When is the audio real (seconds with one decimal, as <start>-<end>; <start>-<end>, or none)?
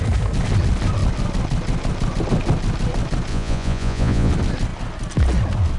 0.0-3.3; 4.3-5.8